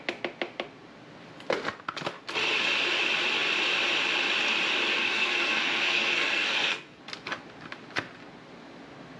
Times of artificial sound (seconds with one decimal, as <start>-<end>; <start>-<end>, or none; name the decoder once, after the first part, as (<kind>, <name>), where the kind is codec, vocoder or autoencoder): 4.9-7.0 (codec, SNAC)